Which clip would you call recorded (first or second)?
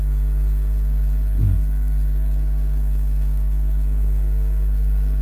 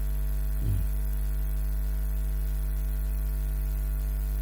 second